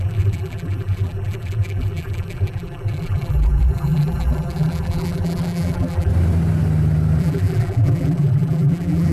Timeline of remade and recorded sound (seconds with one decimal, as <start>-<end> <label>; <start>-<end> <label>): 0.0-6.1 remade; 6.1-7.2 recorded; 7.2-9.1 remade